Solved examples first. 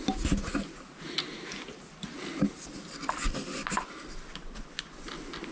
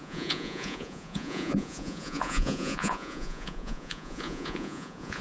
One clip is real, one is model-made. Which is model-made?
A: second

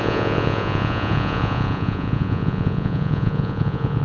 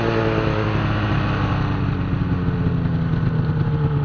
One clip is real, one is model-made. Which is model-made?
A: first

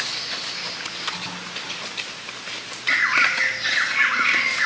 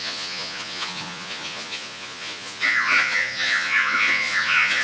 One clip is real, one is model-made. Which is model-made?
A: second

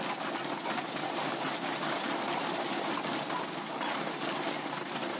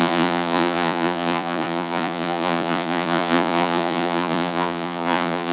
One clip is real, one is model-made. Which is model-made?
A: second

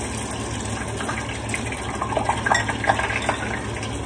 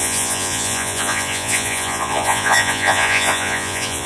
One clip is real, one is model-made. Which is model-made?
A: second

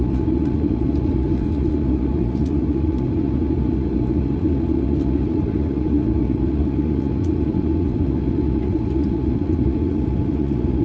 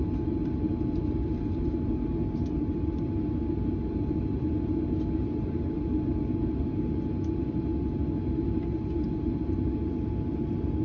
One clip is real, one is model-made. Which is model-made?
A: first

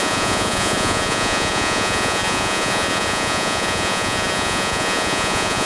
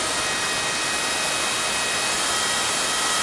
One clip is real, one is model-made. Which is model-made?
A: first